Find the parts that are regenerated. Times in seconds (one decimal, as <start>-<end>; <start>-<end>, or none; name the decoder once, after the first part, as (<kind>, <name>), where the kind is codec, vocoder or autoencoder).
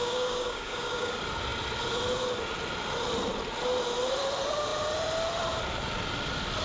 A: 0.0-1.1 (codec, DAC)